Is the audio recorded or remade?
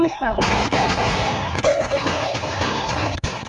remade